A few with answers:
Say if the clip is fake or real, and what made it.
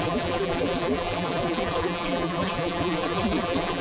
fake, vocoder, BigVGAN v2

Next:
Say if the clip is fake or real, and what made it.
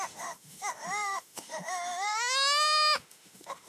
fake, autoencoder, DAC-VAE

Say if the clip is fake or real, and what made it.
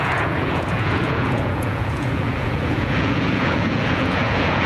fake, vocoder, Vocos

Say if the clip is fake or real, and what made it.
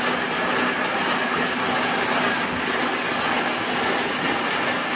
real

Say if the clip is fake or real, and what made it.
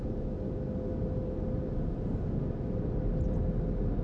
real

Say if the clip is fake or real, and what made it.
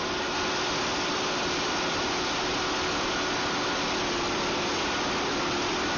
real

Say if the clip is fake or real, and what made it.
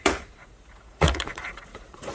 fake, vocoder, Vocos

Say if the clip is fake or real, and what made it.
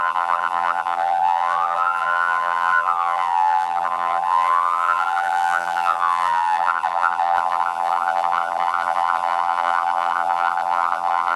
fake, vocoder, BigVGAN v2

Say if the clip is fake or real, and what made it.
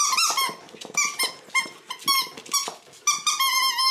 real